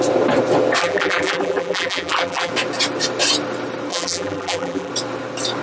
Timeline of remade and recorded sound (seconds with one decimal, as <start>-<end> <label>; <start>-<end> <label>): 0.0-0.8 recorded; 0.8-2.5 remade; 2.5-3.9 recorded; 3.9-4.9 remade; 4.9-5.6 recorded